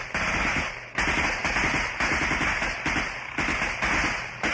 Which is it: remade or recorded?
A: recorded